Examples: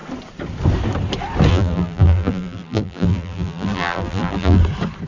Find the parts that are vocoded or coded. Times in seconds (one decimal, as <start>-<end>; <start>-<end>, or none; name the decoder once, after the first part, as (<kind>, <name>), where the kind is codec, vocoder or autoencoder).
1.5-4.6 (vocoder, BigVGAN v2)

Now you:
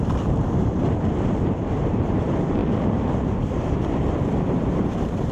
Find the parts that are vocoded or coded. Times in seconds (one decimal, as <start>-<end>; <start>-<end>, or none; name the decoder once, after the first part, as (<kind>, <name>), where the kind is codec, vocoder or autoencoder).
0.0-2.6 (vocoder, BigVGAN v2); 4.1-5.3

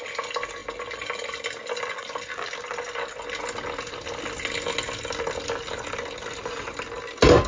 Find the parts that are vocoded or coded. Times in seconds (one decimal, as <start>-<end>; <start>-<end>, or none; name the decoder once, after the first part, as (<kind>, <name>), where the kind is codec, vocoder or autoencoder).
none